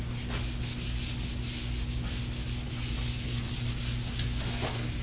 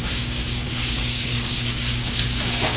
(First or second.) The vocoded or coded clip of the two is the second